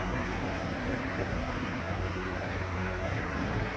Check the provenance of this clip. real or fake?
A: fake